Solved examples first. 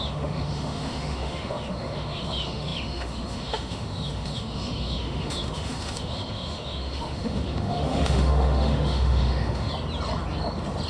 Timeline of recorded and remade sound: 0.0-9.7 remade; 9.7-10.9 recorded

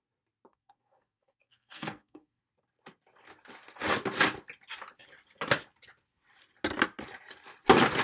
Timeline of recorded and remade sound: 0.0-0.5 recorded; 0.5-2.4 remade; 2.4-8.0 recorded

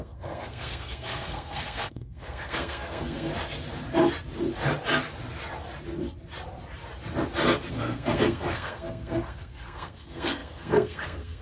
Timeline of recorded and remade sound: 0.0-3.3 remade; 3.3-7.7 recorded; 7.7-11.4 remade